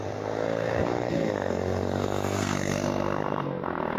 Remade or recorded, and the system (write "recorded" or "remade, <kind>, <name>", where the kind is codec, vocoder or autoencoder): remade, codec, SNAC